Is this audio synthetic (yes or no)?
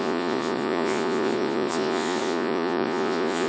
yes